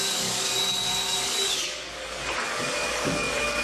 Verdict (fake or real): fake